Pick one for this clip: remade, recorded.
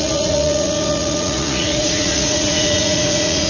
remade